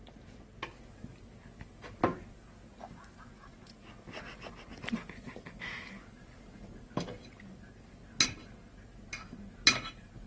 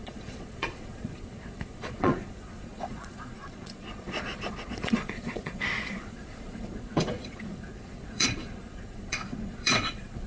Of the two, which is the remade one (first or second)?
second